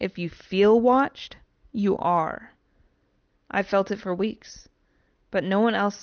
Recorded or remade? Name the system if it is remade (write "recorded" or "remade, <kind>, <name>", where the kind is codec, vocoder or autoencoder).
recorded